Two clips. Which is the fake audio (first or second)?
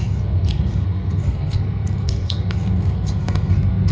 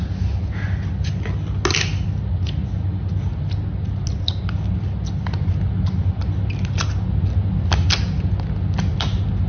first